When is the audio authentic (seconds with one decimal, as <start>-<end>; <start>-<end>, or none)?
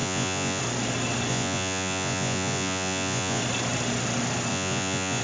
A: 0.6-1.3; 3.4-4.5